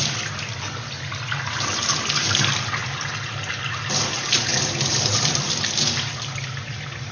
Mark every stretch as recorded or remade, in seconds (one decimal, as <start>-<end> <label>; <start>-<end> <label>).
0.0-7.1 recorded